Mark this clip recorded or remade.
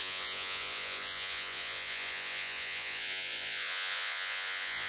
remade